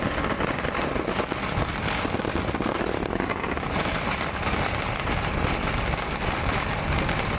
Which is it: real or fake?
real